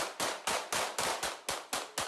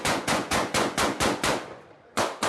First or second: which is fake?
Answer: second